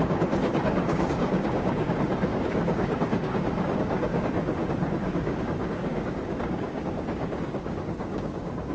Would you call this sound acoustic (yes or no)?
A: no